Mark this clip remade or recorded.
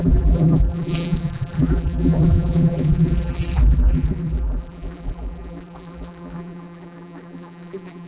remade